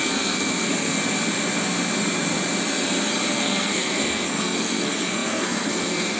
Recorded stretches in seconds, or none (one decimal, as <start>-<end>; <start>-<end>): 1.0-3.3